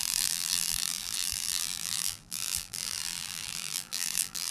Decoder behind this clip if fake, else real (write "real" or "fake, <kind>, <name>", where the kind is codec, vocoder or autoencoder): fake, vocoder, BigVGAN v2